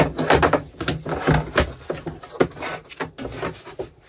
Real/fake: real